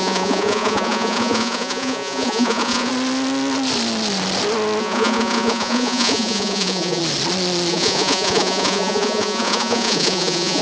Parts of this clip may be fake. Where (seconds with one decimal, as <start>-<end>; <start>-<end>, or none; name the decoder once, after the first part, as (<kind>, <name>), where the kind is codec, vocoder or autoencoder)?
0.0-2.9 (vocoder, Vocos); 4.8-7.0; 7.7-10.6